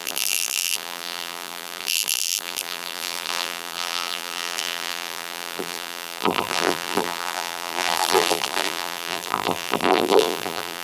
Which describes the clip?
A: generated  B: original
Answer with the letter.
A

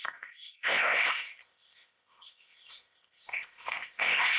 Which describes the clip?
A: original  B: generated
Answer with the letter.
B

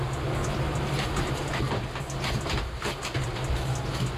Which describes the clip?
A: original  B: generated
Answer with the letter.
A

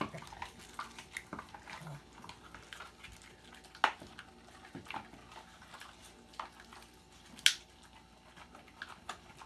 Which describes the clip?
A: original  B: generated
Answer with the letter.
A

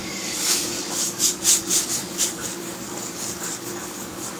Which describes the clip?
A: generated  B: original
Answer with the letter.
A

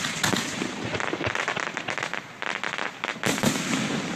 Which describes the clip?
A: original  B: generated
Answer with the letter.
A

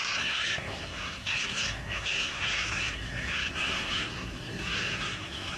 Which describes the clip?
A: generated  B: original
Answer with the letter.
A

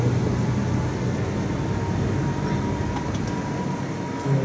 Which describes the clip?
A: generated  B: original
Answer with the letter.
B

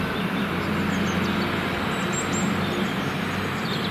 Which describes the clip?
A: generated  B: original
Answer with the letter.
B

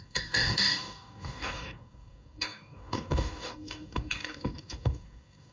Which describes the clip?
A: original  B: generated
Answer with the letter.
B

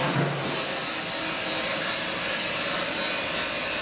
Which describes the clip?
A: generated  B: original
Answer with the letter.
B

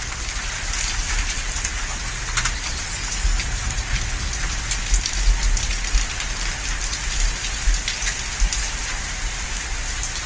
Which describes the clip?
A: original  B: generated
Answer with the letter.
A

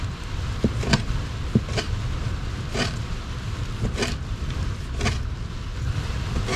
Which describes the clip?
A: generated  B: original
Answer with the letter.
A